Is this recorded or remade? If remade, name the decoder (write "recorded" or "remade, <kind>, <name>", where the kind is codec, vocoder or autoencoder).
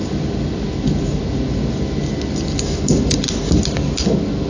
recorded